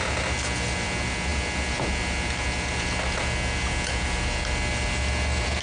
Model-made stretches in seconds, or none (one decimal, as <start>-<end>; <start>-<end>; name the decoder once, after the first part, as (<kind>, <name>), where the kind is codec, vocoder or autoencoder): none